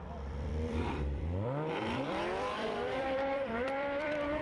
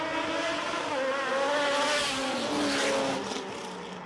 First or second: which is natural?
second